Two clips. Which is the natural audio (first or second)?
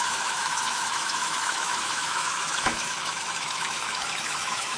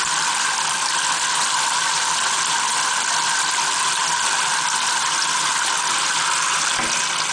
second